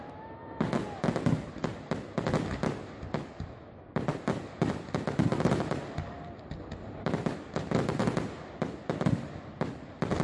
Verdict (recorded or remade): recorded